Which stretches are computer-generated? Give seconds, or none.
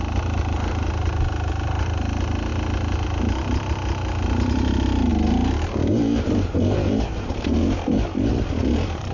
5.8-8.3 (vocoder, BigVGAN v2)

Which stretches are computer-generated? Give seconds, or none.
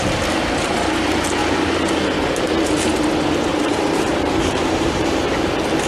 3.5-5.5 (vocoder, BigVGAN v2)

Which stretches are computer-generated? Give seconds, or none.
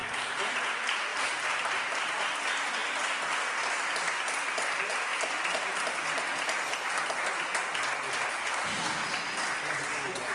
0.0-0.6 (vocoder, BigVGAN v2); 1.1-2.2